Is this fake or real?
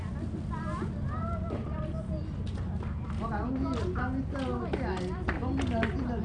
real